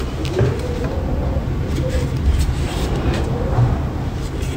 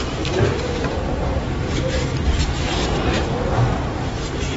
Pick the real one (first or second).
first